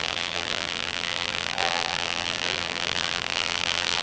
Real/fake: fake